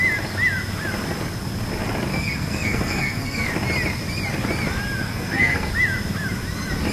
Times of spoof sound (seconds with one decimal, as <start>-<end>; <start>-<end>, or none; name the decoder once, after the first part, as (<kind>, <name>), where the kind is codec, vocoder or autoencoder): 2.1-3.5 (codec, SNAC); 5.0-5.7